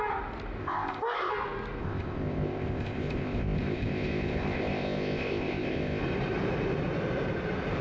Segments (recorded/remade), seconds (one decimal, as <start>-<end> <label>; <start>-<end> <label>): 0.0-0.6 recorded; 0.6-1.3 remade; 1.3-1.8 recorded; 1.8-6.0 remade; 6.0-7.8 recorded